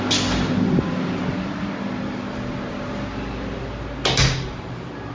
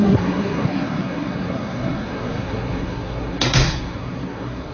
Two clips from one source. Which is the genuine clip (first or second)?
first